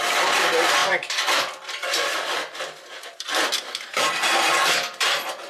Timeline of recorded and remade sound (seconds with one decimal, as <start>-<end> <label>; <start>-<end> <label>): 0.0-5.5 remade